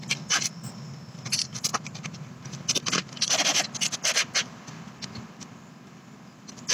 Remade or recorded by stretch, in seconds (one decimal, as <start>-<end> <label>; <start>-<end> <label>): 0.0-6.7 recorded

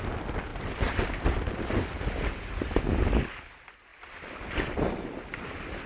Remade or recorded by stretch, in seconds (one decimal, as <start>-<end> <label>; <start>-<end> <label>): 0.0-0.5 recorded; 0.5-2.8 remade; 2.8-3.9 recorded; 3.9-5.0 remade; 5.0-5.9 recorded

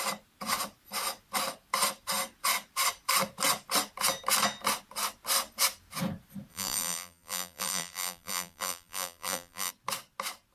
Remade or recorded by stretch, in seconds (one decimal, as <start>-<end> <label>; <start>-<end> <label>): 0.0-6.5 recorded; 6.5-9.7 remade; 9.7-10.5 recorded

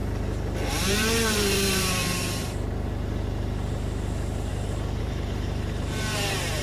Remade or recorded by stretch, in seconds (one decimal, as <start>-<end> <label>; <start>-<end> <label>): 0.0-0.7 recorded; 0.7-4.5 remade; 4.5-5.0 recorded; 5.0-6.6 remade